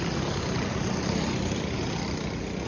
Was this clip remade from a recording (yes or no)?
no